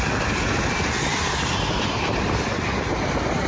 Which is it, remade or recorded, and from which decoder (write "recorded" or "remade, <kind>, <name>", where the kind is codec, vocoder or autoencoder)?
recorded